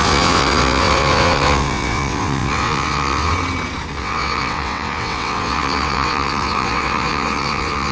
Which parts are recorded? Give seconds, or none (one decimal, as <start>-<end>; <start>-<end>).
3.3-3.9